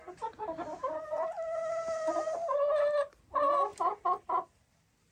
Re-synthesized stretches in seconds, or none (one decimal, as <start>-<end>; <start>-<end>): none